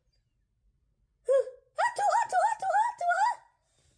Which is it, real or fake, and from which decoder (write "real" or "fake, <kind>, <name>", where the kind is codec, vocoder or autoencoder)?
real